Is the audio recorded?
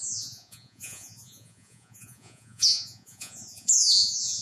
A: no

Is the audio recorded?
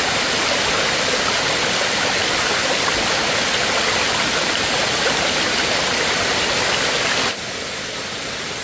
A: yes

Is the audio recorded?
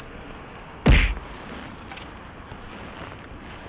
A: yes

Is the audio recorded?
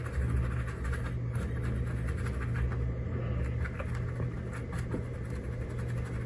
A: yes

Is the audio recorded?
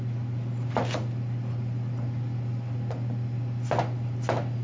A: yes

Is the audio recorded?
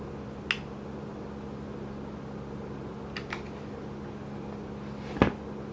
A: yes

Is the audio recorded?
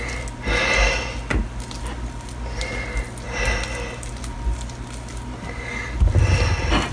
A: yes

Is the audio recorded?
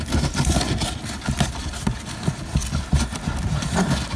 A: yes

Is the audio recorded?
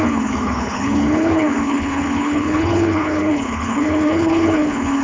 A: no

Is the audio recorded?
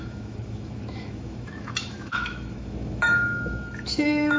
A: no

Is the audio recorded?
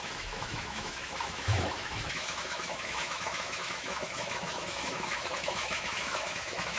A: no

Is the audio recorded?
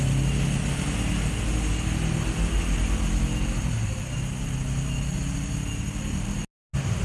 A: yes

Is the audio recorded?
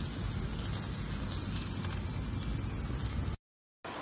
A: yes